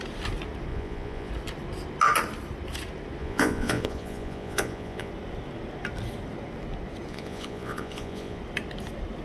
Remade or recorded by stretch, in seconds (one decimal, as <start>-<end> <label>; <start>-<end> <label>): 0.0-0.7 recorded; 0.7-1.3 remade; 1.3-3.2 recorded; 3.2-5.1 remade; 5.1-7.1 recorded; 7.1-8.4 remade; 8.4-9.2 recorded